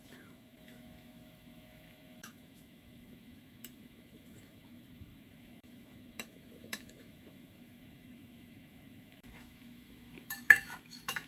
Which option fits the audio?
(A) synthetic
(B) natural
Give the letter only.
A